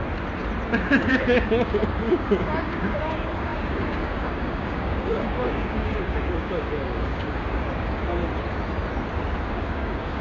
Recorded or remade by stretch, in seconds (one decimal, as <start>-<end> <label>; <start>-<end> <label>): 0.0-1.1 recorded; 1.1-8.2 remade; 8.2-9.5 recorded; 9.5-10.2 remade